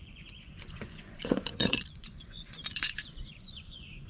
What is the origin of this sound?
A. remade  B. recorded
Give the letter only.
A